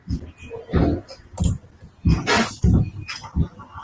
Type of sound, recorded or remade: recorded